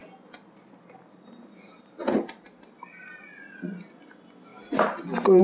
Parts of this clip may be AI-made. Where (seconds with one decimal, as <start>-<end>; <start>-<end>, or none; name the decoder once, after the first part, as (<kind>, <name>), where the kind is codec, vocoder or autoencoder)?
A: none

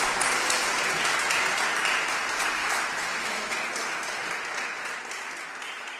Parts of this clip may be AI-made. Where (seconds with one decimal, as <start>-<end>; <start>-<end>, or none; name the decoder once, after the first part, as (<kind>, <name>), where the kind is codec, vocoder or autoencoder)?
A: 2.6-3.6 (autoencoder, DAC-VAE)

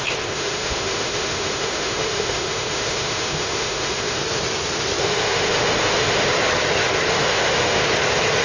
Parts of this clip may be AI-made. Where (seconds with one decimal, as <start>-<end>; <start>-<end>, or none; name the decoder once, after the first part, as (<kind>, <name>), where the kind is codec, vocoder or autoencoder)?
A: 0.0-4.2 (autoencoder, DAC-VAE); 5.0-6.3; 7.1-7.8